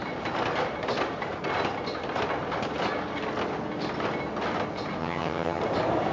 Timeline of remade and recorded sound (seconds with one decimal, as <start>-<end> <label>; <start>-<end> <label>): 0.0-5.0 recorded; 5.0-5.6 remade; 5.6-6.1 recorded